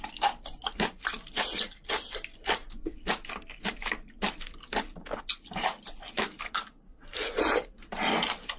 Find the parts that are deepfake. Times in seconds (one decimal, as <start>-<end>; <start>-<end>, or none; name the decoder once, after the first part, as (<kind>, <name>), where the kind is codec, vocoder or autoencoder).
none